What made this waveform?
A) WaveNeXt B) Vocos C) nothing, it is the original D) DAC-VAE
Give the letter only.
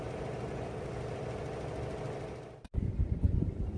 C